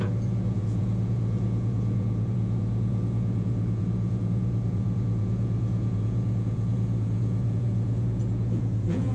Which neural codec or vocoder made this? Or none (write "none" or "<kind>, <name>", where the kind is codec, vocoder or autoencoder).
vocoder, Vocos